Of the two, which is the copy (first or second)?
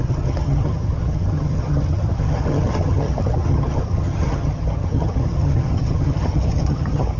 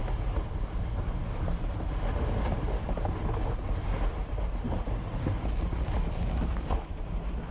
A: first